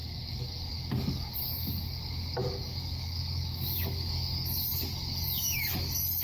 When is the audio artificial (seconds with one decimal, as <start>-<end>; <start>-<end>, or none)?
0.0-6.2